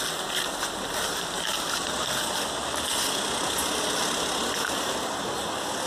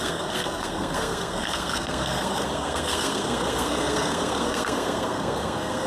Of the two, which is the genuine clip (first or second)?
first